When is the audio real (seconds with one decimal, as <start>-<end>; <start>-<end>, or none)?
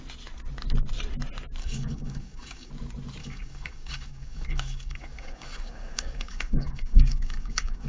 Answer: 0.0-1.6; 2.7-3.2